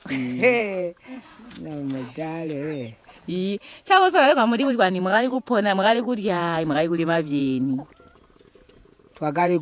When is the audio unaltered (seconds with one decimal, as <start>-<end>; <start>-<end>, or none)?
0.0-0.6